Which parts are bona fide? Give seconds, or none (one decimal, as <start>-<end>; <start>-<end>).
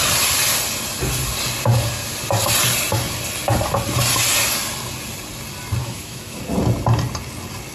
0.0-5.8; 6.4-7.7